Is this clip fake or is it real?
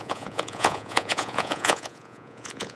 fake